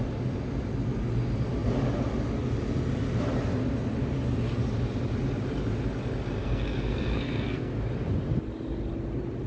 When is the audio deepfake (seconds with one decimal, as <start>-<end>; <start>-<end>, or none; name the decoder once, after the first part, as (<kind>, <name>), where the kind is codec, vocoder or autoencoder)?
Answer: 6.4-7.7 (codec, SNAC)